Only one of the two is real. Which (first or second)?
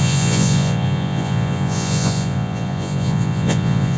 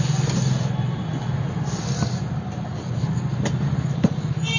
second